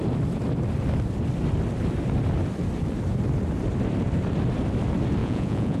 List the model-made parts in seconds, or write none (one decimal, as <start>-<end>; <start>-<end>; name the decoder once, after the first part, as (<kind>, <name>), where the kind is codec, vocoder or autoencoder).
5.2-5.8 (vocoder, Vocos)